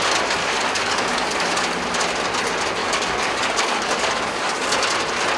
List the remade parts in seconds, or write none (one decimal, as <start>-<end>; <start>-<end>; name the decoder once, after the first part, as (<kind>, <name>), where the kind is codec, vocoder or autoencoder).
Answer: 0.4-1.6 (codec, DAC); 2.8-4.9

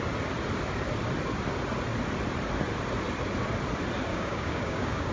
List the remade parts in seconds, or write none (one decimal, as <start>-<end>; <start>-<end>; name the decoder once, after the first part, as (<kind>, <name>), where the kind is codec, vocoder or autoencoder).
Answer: 4.1-5.1 (codec, DAC)

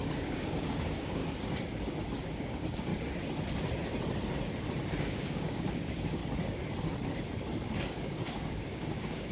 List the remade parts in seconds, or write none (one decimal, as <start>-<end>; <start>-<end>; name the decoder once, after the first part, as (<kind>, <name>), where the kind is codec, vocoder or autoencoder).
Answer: 0.0-1.2 (codec, DAC); 2.2-2.9; 5.0-6.2; 7.8-9.3

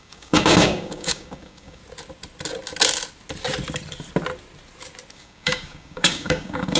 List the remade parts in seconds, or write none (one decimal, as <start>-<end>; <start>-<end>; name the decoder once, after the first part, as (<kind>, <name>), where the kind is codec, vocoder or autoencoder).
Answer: 0.0-1.8 (codec, DAC); 5.1-6.8

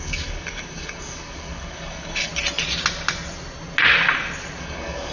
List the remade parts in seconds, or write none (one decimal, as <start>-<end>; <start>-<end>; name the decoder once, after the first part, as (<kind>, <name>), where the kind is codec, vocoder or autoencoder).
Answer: 0.0-2.3 (codec, DAC); 4.6-5.1

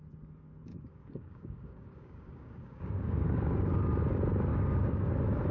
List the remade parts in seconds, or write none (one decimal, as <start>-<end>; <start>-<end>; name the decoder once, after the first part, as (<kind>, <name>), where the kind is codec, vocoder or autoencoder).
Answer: 0.7-4.0 (codec, DAC); 4.5-5.1